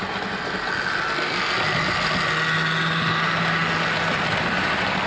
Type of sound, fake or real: real